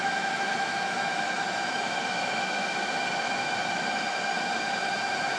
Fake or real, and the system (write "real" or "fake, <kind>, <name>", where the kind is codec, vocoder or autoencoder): fake, autoencoder, DAC-VAE